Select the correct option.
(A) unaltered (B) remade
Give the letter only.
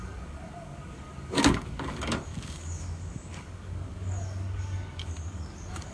B